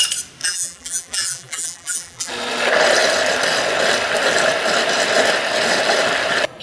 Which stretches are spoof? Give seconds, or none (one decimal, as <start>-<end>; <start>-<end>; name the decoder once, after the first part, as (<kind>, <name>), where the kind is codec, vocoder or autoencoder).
0.4-2.3 (vocoder, BigVGAN v2)